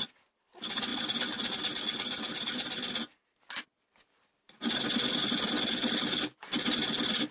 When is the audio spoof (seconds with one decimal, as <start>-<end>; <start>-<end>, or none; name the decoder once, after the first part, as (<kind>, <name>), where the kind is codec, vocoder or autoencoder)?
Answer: none

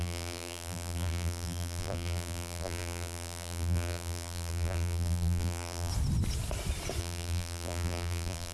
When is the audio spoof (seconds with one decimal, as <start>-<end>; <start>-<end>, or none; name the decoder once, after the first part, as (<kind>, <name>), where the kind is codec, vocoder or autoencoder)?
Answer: 0.0-5.9 (vocoder, BigVGAN v2); 7.0-8.5

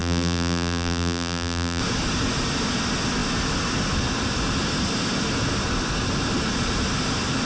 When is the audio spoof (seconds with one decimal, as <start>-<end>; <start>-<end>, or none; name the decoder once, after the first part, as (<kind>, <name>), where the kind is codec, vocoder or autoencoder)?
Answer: 0.0-1.8 (vocoder, BigVGAN v2)

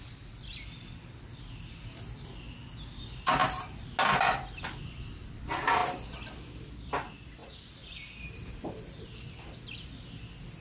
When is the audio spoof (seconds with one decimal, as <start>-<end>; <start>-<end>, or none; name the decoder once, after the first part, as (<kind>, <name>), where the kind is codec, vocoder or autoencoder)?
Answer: 7.4-9.1 (vocoder, BigVGAN v2)